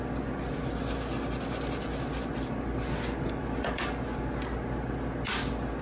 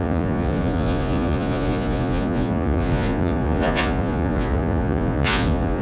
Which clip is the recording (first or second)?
first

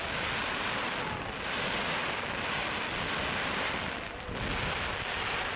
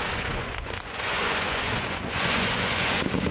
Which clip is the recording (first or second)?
first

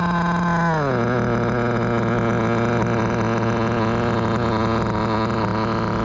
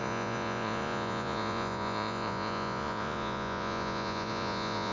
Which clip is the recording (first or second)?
first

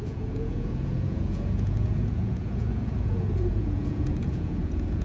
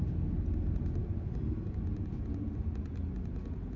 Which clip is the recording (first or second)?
second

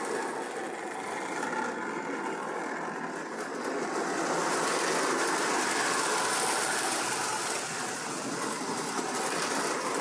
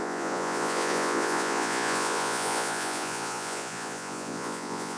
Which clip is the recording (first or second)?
first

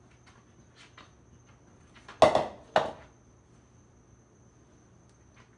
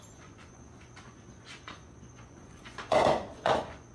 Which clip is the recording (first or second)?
first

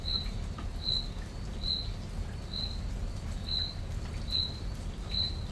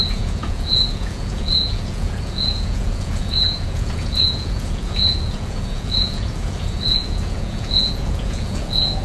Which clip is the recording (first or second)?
first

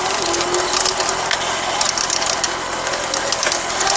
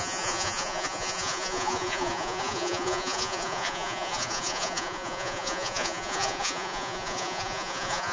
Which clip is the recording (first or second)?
first